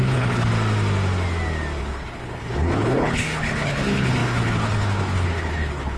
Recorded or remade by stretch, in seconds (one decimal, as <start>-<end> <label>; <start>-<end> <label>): 0.0-0.5 remade; 0.5-1.8 recorded; 1.8-6.0 remade